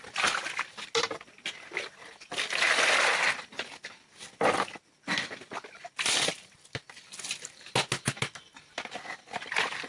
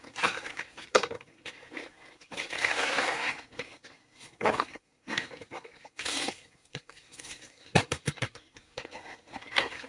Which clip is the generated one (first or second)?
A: second